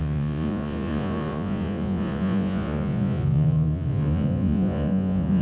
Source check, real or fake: fake